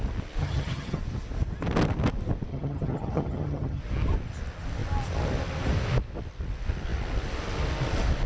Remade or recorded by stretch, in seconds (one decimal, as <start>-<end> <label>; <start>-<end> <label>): 0.0-0.4 recorded; 0.4-1.0 remade; 1.0-2.5 recorded; 2.5-3.8 remade; 3.8-8.3 recorded